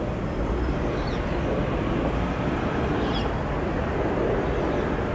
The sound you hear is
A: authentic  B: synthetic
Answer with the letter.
A